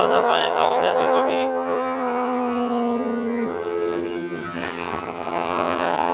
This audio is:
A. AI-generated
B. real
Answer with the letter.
A